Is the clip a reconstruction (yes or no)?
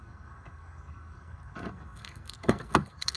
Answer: yes